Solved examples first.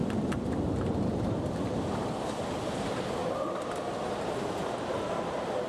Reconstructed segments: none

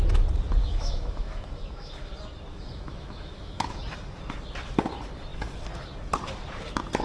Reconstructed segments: 0.6-2.1 (autoencoder, DAC-VAE); 2.5-3.8

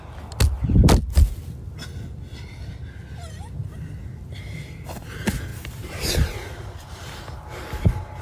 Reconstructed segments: 5.5-7.2 (vocoder, BigVGAN v2)

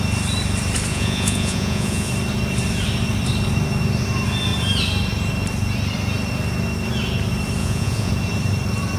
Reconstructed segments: 0.9-2.1 (vocoder, Vocos); 7.6-8.1

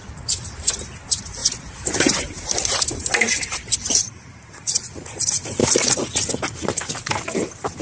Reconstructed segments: 0.5-5.6 (vocoder, BigVGAN v2); 7.1-7.8

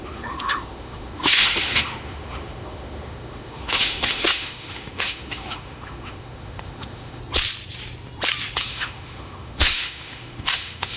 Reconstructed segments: 0.0-7.2 (autoencoder, DAC-VAE); 8.6-11.0

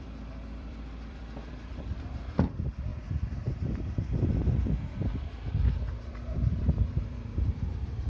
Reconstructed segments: 0.0-2.9 (vocoder, BigVGAN v2); 5.5-8.1